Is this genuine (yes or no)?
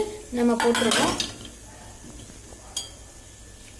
yes